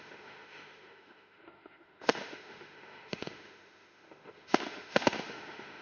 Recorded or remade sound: remade